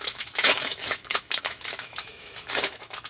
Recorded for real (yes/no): no